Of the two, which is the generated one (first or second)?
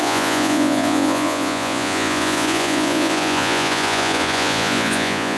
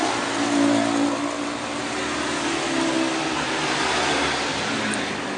first